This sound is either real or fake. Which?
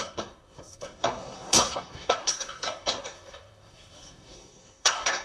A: fake